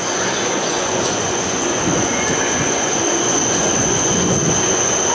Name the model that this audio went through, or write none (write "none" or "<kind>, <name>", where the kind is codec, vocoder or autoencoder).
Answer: vocoder, Vocos